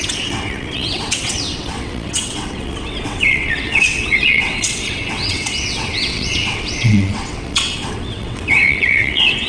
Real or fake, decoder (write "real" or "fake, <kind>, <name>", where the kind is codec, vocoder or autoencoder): fake, vocoder, WaveNeXt